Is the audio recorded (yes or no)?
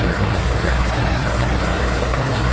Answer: no